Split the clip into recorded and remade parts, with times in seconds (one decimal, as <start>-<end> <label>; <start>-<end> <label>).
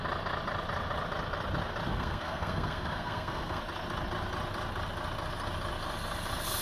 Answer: 0.0-1.9 recorded; 1.9-3.6 remade; 3.6-6.6 recorded